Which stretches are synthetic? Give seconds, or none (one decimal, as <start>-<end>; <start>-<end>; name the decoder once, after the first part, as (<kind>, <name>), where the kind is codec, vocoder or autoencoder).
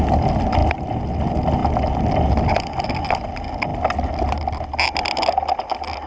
none